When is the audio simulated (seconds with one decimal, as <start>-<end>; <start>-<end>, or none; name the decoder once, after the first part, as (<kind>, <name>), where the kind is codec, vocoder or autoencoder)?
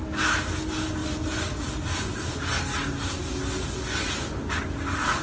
none